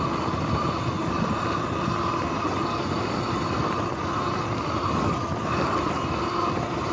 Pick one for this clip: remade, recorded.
recorded